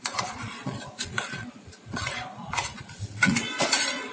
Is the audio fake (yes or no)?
yes